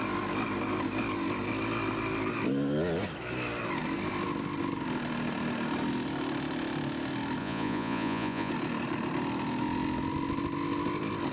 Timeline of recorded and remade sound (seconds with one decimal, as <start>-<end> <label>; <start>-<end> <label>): 0.0-7.4 recorded; 7.4-8.5 remade; 8.5-11.3 recorded